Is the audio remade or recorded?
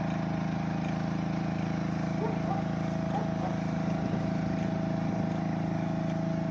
recorded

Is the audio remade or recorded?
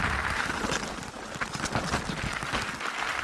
recorded